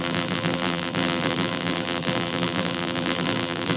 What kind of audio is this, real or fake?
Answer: fake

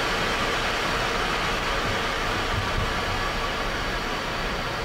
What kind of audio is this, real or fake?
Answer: real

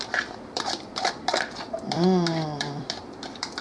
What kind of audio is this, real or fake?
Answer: fake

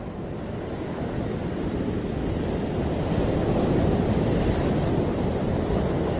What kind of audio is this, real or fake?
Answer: fake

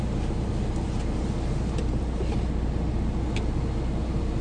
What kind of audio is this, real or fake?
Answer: real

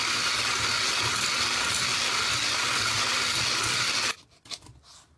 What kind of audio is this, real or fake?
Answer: real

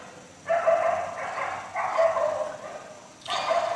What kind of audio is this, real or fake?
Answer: real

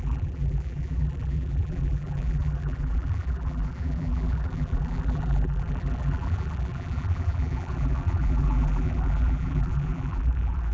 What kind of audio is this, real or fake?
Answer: fake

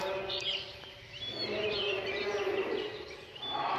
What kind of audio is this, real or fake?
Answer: real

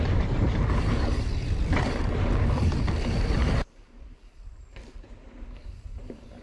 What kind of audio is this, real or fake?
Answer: fake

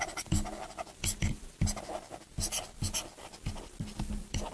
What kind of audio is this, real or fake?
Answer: real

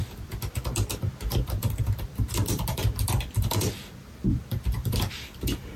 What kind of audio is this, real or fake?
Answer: fake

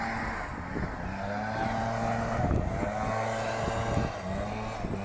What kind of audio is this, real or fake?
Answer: real